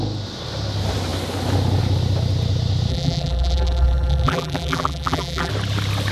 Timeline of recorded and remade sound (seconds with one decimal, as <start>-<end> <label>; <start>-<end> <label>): 0.0-2.9 recorded; 2.9-5.5 remade; 5.5-6.1 recorded